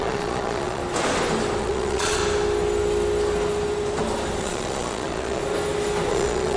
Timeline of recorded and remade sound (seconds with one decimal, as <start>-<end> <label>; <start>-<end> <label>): 0.0-0.8 remade; 0.8-1.6 recorded; 1.6-2.2 remade; 2.2-4.4 recorded; 4.4-5.4 remade; 5.4-6.1 recorded; 6.1-6.6 remade